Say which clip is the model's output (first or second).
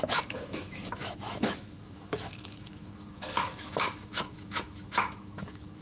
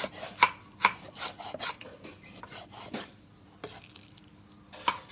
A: first